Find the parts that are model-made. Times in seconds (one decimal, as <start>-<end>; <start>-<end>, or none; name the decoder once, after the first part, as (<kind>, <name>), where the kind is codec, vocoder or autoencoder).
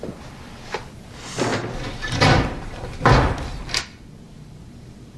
none